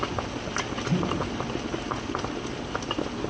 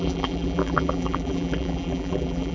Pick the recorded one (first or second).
first